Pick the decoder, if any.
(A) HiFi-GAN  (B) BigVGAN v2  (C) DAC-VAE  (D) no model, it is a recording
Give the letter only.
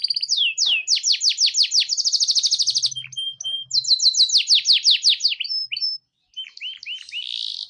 D